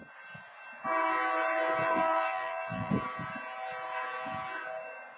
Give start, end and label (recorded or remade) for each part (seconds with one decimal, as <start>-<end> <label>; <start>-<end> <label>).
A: 0.0-1.8 recorded; 1.8-2.9 remade; 2.9-5.2 recorded